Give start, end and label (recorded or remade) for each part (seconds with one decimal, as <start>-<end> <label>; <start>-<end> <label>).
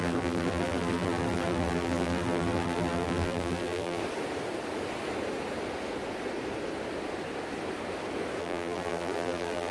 0.0-4.0 remade; 4.0-8.4 recorded; 8.4-9.7 remade